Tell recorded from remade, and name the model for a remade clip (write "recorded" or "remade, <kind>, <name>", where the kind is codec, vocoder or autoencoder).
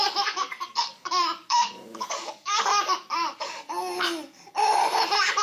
remade, codec, DAC